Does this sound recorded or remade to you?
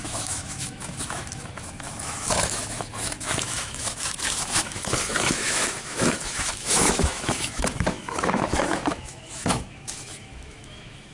remade